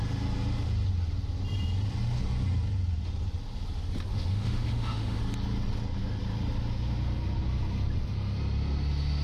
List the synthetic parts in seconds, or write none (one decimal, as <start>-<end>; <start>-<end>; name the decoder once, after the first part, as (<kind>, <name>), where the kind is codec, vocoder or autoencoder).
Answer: 4.1-5.2 (autoencoder, DAC-VAE)